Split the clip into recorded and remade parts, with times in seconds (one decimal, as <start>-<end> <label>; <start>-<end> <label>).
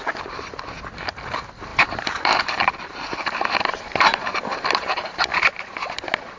0.0-1.7 recorded; 1.7-5.5 remade; 5.5-6.4 recorded